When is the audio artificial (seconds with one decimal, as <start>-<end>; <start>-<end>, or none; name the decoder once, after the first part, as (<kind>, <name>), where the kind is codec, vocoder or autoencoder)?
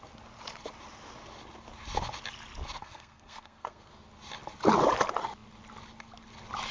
2.8-3.9 (codec, SNAC)